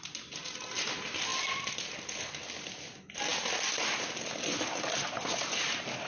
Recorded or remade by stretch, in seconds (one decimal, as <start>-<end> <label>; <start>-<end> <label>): 0.0-6.1 recorded